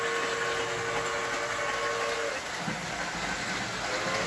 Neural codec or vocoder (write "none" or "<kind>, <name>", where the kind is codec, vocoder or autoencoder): none